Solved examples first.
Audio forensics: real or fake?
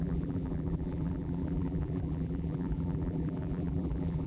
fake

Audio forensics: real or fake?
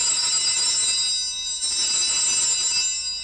real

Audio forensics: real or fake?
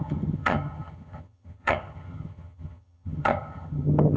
fake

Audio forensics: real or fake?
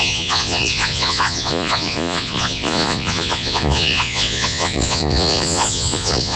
fake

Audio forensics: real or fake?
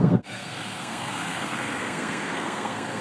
fake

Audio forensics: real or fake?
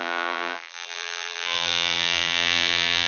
fake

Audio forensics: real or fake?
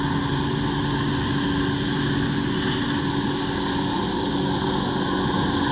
real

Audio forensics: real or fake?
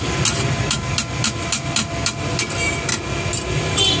real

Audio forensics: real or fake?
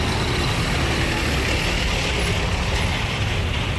real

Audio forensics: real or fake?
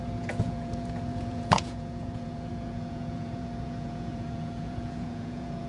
fake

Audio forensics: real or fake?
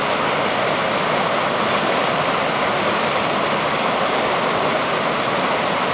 real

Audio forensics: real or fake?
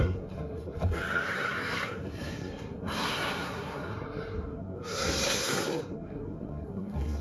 fake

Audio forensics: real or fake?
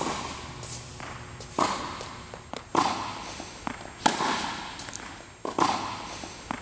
real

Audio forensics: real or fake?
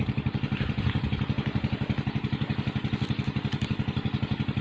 fake